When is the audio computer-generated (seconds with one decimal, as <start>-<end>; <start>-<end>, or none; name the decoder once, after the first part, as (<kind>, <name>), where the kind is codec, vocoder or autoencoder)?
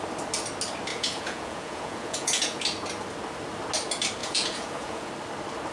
0.9-2.6 (vocoder, Vocos); 4.2-5.1